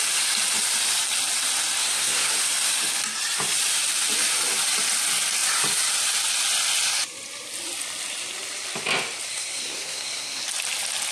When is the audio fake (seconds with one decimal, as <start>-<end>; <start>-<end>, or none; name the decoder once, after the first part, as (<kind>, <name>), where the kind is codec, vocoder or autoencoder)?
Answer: 1.8-2.3 (codec, SNAC); 9.3-10.4